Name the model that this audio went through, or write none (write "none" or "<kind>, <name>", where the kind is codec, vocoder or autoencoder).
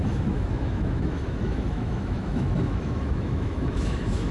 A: autoencoder, DAC-VAE